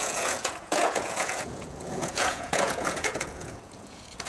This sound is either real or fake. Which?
fake